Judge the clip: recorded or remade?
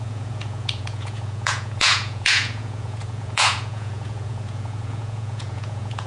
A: remade